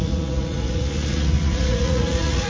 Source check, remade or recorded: remade